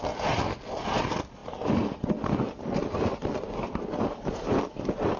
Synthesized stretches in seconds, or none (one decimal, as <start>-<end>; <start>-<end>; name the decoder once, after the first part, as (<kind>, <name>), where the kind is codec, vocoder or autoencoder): none